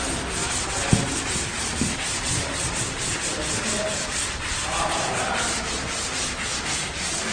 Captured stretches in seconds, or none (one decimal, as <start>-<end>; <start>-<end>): 0.0-1.5; 2.5-4.1; 4.8-7.3